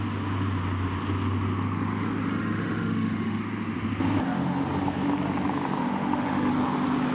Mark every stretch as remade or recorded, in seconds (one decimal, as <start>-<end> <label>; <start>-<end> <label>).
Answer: 0.0-2.3 recorded; 2.3-3.4 remade; 3.4-5.8 recorded; 5.8-6.5 remade; 6.5-7.1 recorded